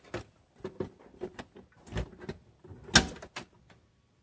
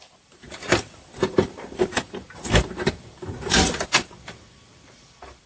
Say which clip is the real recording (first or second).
first